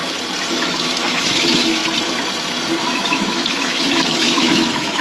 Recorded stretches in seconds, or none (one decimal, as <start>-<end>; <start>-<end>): 0.0-0.5; 1.8-2.8